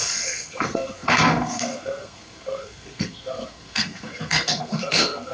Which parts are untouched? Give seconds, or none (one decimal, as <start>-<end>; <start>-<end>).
none